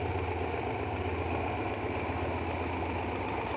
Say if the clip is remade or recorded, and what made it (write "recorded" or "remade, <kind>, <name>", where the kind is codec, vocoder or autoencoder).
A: recorded